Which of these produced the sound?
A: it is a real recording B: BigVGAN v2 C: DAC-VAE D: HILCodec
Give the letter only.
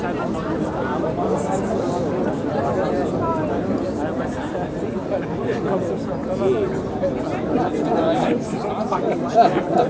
A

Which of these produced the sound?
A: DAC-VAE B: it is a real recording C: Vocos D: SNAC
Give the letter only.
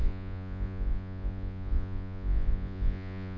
C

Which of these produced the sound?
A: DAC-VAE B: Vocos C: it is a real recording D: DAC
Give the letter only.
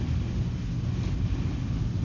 C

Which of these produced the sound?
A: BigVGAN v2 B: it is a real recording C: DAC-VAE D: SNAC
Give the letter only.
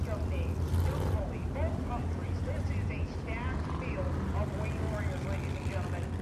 B